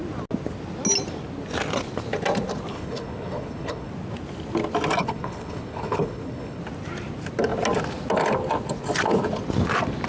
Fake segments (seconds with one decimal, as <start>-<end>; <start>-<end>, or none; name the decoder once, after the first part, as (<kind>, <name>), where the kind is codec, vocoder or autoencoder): 2.7-3.9 (codec, HILCodec); 5.0-6.6